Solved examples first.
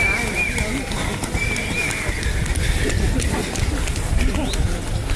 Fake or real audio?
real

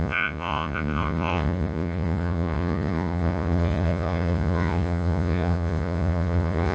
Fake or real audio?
fake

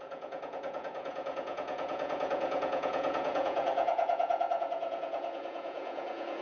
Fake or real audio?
fake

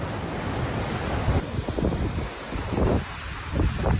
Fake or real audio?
real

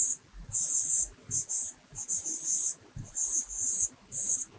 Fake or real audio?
real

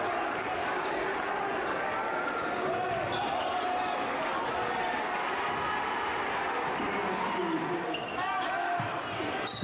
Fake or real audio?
real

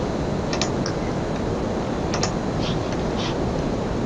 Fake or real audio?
real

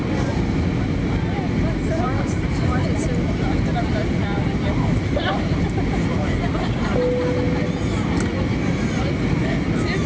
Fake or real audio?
real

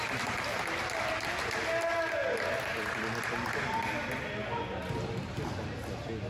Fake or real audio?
real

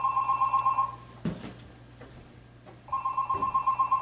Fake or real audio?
real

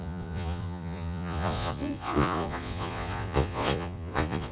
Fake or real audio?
fake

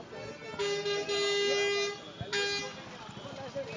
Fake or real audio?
real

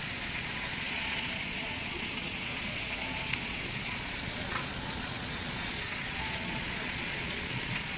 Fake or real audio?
fake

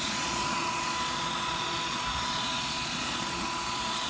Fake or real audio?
fake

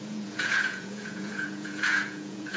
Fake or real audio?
fake